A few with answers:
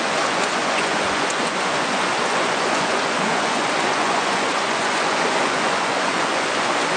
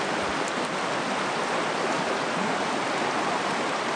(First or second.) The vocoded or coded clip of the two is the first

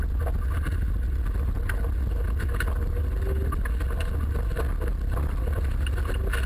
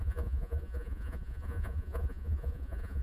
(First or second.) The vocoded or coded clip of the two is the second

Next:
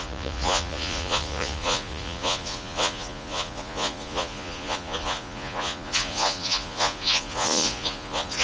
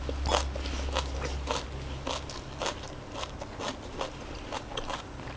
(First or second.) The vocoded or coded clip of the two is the first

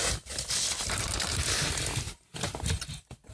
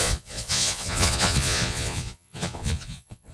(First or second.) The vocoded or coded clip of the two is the second